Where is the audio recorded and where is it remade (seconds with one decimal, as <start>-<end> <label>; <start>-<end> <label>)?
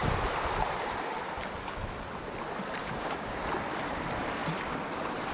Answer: 0.0-2.8 recorded; 2.8-3.4 remade; 3.4-5.3 recorded